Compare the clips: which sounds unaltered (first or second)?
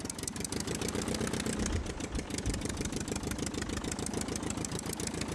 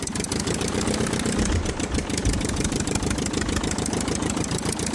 first